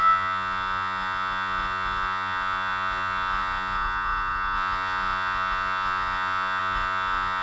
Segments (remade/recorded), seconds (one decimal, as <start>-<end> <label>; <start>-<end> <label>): 0.0-7.4 remade